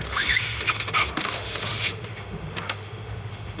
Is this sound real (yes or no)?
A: no